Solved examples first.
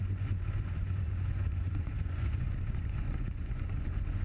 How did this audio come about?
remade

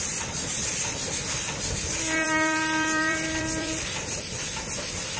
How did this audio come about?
remade